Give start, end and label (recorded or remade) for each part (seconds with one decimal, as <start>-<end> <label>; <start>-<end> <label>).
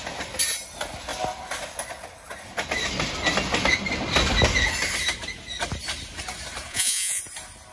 0.0-6.7 recorded; 6.7-7.2 remade; 7.2-7.7 recorded